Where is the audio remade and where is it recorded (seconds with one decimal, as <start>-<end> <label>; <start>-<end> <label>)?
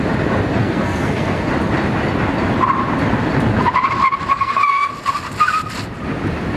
0.0-0.6 recorded; 0.6-1.5 remade; 1.5-4.3 recorded; 4.3-4.9 remade; 4.9-6.6 recorded